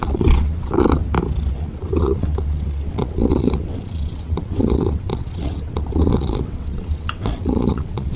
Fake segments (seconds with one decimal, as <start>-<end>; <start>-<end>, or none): 0.0-1.0; 1.5-8.2